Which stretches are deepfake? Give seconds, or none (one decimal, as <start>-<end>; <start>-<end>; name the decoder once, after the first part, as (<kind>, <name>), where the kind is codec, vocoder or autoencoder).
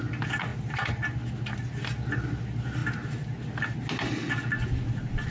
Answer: none